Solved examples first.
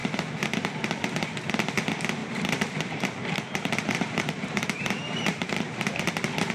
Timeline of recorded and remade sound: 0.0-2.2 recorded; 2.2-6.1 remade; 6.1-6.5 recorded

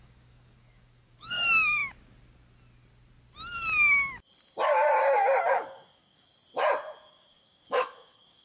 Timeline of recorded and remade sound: 0.0-1.8 remade; 1.8-5.5 recorded; 5.5-6.3 remade; 6.3-7.1 recorded; 7.1-8.4 remade

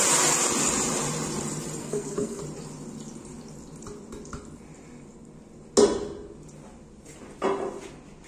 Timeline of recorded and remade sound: 0.0-1.8 recorded; 1.8-2.4 remade; 2.4-8.3 recorded

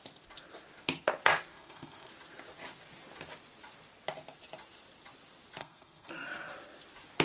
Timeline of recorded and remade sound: 0.0-1.5 recorded; 1.5-2.1 remade; 2.1-5.6 recorded; 5.6-6.1 remade; 6.1-7.2 recorded

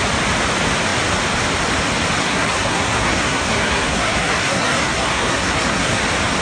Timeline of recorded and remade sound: 0.0-2.2 recorded; 2.2-6.0 remade; 6.0-6.4 recorded

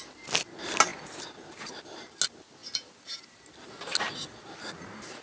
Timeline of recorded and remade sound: 0.0-0.9 recorded; 0.9-1.7 remade; 1.7-5.2 recorded